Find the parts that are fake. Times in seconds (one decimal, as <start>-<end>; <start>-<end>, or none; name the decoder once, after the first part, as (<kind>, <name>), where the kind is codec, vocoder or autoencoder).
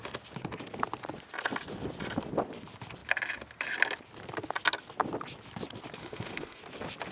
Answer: 6.0-6.6 (autoencoder, DAC-VAE)